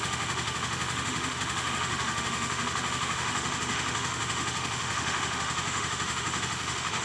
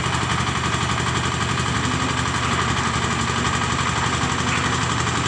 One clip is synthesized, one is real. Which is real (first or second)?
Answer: second